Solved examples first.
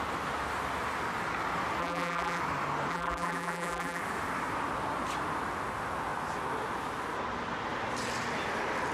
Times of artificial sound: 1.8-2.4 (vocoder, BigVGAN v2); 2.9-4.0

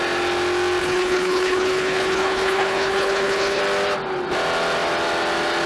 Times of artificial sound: 0.8-3.6 (codec, HILCodec)

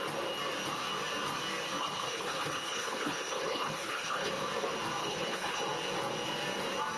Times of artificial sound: 1.8-4.3 (codec, HILCodec); 5.0-5.6

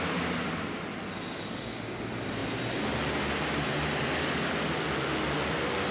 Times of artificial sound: none

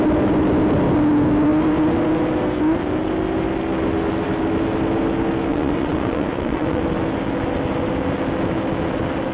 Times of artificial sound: 5.5-6.8 (vocoder, Vocos)

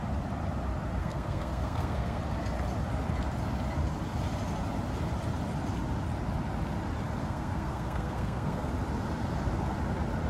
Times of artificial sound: 1.0-2.2 (codec, SNAC); 7.2-8.7